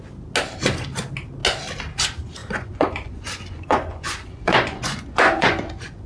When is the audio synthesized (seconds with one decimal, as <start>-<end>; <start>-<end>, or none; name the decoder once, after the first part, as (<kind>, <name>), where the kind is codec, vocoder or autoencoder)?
2.4-6.1 (vocoder, Vocos)